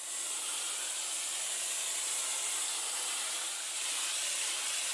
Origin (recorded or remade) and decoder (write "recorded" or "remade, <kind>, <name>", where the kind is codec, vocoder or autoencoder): remade, vocoder, BigVGAN v2